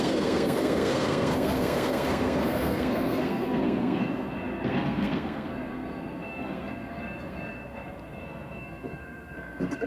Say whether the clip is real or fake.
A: fake